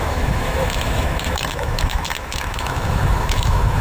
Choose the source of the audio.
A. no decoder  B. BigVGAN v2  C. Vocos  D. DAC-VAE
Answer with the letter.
D